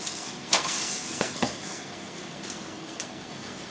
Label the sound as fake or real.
fake